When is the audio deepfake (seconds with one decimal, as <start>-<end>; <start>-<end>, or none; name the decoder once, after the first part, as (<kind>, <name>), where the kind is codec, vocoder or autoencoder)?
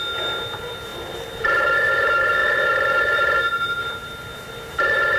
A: none